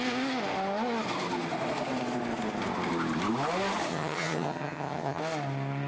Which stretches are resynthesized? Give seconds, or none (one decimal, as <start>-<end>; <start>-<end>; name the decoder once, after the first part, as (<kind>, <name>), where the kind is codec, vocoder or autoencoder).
3.9-5.2 (vocoder, HiFi-GAN)